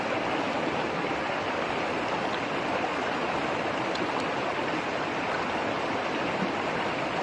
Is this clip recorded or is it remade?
recorded